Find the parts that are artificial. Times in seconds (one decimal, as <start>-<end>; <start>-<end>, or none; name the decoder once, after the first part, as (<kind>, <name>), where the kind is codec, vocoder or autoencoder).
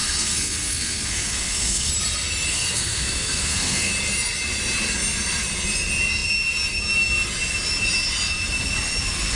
0.0-1.9 (codec, SNAC); 2.5-3.9